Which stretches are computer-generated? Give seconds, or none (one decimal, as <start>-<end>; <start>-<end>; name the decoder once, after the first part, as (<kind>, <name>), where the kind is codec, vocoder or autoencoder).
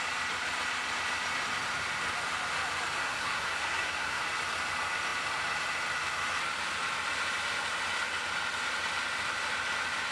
3.0-4.2 (codec, SNAC)